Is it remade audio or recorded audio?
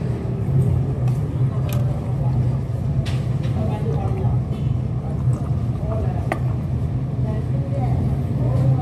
recorded